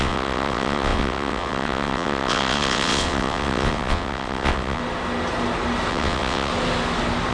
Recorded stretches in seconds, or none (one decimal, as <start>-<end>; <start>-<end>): 4.8-5.9; 6.5-7.3